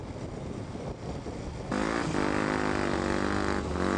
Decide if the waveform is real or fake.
real